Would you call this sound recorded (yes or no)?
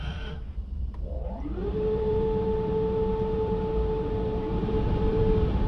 no